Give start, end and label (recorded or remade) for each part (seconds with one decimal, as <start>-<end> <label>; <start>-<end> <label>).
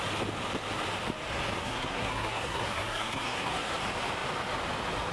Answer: 0.0-1.6 recorded; 1.6-3.7 remade; 3.7-5.1 recorded